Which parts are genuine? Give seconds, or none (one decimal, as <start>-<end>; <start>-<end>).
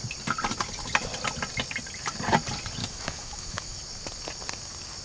0.0-2.8; 3.8-5.0